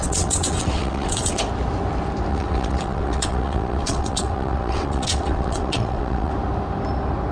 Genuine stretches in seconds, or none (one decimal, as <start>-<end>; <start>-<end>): 1.4-2.3; 6.3-7.3